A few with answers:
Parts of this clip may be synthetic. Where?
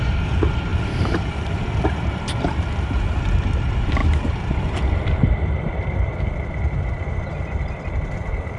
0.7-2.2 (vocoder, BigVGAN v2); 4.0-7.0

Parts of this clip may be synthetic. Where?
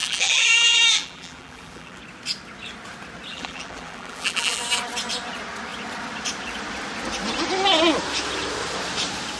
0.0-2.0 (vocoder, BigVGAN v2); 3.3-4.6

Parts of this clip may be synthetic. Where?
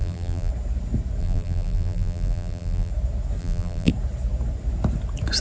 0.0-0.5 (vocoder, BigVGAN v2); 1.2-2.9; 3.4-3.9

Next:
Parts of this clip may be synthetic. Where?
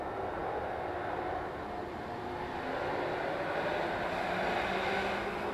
none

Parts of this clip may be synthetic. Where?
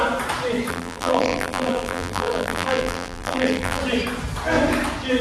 0.7-3.8 (vocoder, BigVGAN v2)